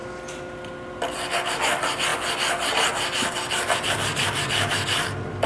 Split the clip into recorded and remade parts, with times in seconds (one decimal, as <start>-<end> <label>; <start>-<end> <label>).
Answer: 0.0-5.5 recorded